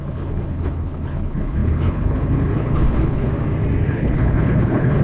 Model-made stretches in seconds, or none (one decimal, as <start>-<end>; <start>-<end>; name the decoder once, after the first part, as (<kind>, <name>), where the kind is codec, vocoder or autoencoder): 0.0-3.3 (codec, HILCodec); 3.9-5.0